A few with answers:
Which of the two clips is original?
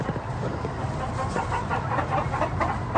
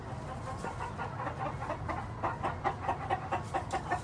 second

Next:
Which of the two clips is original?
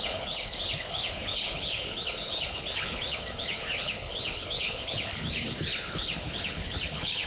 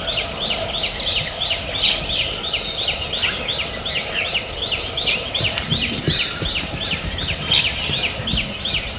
second